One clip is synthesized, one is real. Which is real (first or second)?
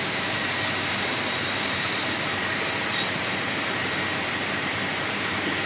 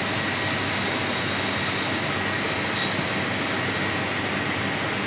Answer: second